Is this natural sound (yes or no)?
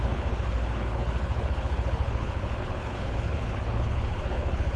no